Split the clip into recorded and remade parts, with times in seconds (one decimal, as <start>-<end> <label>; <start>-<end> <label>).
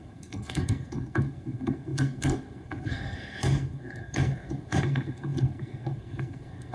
0.0-6.7 remade